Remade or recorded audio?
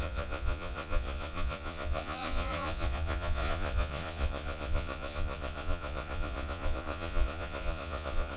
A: remade